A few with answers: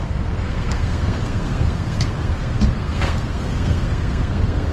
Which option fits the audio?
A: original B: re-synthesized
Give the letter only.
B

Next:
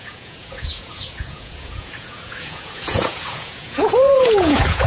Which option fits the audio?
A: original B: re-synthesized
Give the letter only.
B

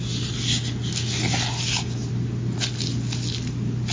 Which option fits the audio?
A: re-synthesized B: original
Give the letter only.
B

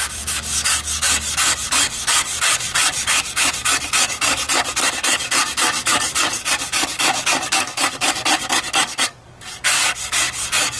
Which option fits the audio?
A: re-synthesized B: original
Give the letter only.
A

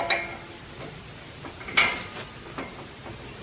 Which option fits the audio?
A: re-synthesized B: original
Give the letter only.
B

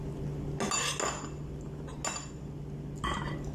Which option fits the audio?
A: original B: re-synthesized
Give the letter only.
A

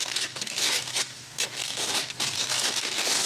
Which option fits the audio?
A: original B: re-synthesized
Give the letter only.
B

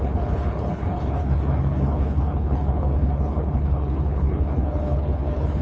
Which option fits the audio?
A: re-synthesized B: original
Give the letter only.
A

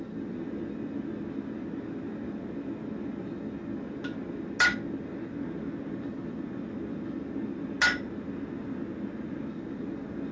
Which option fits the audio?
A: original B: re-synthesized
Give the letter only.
A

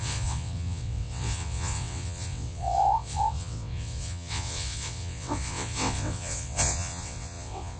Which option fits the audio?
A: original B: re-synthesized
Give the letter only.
B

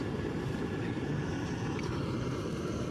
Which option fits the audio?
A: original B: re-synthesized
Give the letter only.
A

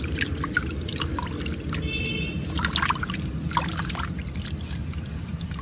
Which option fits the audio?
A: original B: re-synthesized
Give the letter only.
A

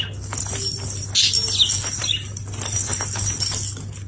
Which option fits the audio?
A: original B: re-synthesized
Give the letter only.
A